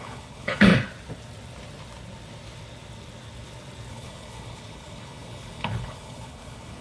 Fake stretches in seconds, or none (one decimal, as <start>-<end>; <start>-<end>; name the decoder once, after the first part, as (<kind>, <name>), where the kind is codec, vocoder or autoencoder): 0.0-0.7 (codec, HILCodec); 3.9-6.8